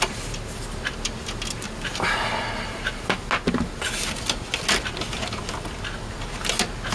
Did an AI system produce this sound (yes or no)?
no